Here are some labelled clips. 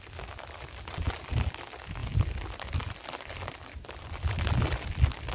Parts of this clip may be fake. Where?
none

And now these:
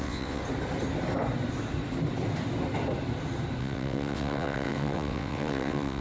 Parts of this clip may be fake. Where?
0.0-0.4 (vocoder, WaveNeXt); 3.6-6.0

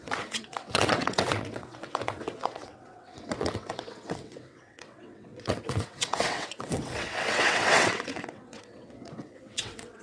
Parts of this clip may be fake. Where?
0.0-10.0 (vocoder, WaveNeXt)